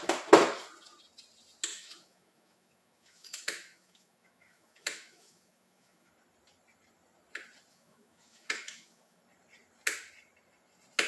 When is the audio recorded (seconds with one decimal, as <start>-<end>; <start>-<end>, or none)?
0.0-1.7; 6.1-7.7; 9.2-11.1